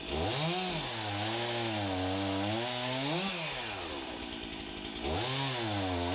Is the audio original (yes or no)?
yes